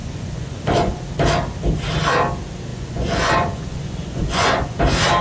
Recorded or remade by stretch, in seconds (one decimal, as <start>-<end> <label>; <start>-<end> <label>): 0.0-1.0 remade; 1.0-2.7 recorded; 2.7-4.8 remade; 4.8-5.2 recorded

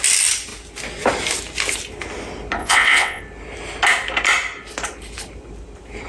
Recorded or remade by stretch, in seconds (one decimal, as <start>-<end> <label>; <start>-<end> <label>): 0.0-2.6 recorded; 2.6-3.2 remade; 3.2-6.1 recorded

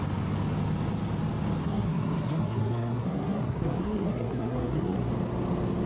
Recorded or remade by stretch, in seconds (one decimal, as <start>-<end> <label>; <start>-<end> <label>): 0.0-1.6 recorded; 1.6-5.1 remade; 5.1-5.9 recorded

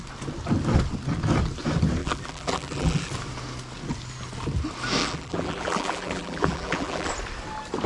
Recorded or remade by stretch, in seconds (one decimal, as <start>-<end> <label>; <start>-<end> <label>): 0.0-2.0 recorded; 2.0-3.1 remade; 3.1-5.0 recorded; 5.0-7.1 remade; 7.1-7.9 recorded